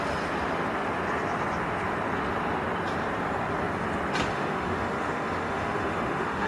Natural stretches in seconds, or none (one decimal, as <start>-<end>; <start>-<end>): 0.0-4.3